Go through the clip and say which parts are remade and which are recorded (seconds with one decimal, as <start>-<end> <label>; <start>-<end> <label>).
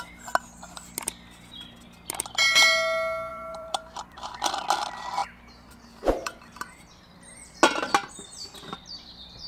0.0-3.3 recorded; 3.3-4.3 remade; 4.3-5.2 recorded; 5.2-7.0 remade; 7.0-9.5 recorded